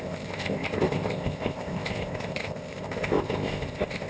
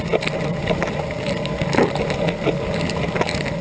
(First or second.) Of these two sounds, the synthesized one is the first